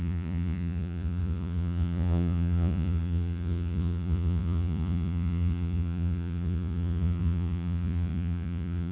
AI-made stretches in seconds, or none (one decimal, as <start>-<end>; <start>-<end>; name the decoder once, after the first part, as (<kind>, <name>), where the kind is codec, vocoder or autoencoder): 0.0-8.9 (vocoder, Vocos)